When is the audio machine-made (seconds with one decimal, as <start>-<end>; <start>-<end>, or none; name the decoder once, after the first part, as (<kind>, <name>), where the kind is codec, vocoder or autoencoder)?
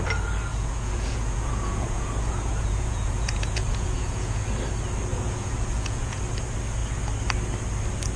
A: 0.5-4.4 (vocoder, Vocos); 5.1-6.2